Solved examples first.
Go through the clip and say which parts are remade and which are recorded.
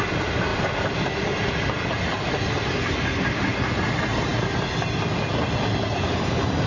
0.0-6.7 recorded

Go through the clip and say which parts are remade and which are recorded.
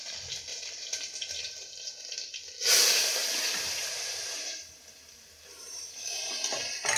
0.0-0.5 recorded; 0.5-1.9 remade; 1.9-2.3 recorded; 2.3-6.0 remade; 6.0-7.0 recorded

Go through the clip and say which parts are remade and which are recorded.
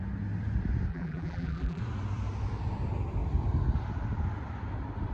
0.0-0.9 recorded; 0.9-1.8 remade; 1.8-5.1 recorded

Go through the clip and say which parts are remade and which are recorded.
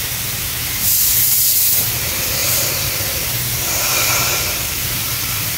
0.0-2.4 recorded; 2.4-4.3 remade; 4.3-4.8 recorded; 4.8-5.6 remade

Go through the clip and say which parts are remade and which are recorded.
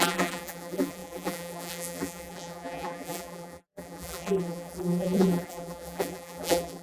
0.0-6.8 remade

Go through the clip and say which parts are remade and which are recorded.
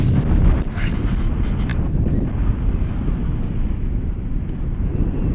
0.0-5.3 recorded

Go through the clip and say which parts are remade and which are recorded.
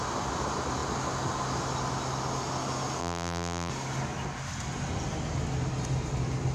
0.0-3.0 recorded; 3.0-3.7 remade; 3.7-6.5 recorded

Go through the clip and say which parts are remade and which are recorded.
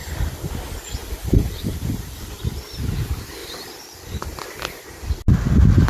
0.0-0.5 remade; 0.5-1.0 recorded; 1.0-2.4 remade; 2.4-3.4 recorded; 3.4-4.4 remade; 4.4-5.9 recorded